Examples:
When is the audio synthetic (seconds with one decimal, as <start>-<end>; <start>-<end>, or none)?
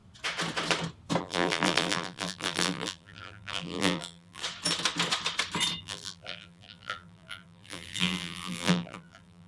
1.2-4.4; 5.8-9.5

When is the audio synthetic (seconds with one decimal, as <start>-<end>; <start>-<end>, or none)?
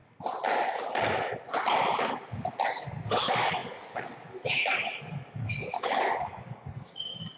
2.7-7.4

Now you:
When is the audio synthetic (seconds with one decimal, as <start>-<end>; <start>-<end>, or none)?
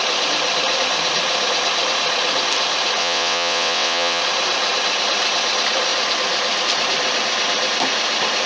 3.0-4.2